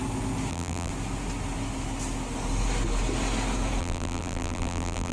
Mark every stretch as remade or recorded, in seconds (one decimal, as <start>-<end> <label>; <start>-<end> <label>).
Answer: 0.0-0.5 recorded; 0.5-0.9 remade; 0.9-3.8 recorded; 3.8-5.1 remade